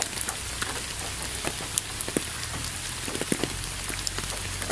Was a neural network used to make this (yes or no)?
no